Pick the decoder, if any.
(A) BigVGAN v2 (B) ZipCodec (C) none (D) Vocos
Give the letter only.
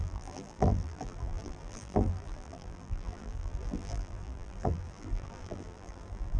A